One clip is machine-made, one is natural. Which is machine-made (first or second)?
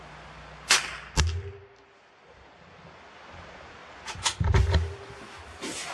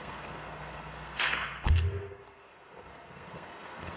second